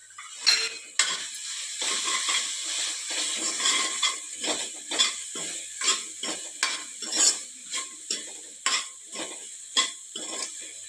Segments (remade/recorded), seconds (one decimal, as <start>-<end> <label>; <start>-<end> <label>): 0.0-10.9 recorded